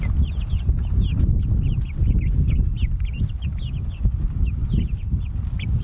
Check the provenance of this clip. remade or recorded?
recorded